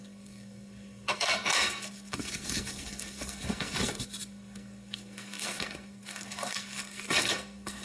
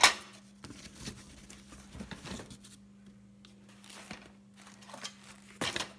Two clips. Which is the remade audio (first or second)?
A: first